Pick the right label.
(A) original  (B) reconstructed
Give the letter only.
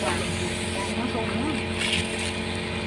A